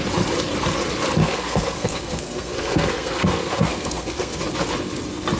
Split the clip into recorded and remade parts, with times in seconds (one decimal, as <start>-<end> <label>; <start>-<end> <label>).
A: 0.0-1.2 recorded; 1.2-4.4 remade; 4.4-5.4 recorded